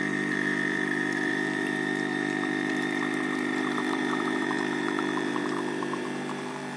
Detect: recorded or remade remade